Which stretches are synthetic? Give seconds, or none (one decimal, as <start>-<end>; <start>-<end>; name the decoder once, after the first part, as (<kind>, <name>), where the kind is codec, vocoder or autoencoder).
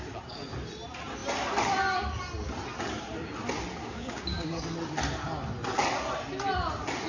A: 3.8-4.6 (codec, DAC)